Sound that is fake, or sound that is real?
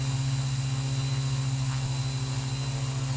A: real